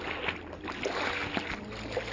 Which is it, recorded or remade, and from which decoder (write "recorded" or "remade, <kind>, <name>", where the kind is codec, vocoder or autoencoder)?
recorded